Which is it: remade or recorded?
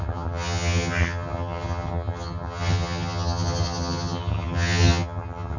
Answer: remade